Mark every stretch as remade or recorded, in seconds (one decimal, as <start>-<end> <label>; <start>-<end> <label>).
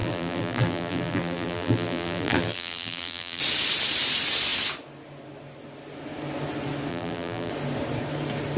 0.0-3.4 remade; 3.4-6.9 recorded; 6.9-7.5 remade; 7.5-8.6 recorded